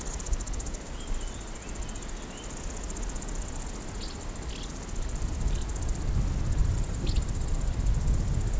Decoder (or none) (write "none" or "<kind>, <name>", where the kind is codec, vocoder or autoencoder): none